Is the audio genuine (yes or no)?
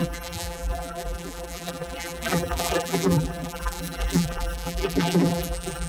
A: no